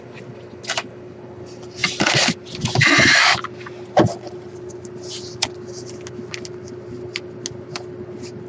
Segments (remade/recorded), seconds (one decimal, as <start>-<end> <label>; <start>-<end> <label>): 0.0-8.5 recorded

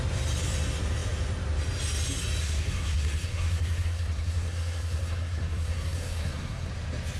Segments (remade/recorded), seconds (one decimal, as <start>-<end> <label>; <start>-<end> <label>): 0.0-2.4 recorded; 2.4-6.7 remade; 6.7-7.2 recorded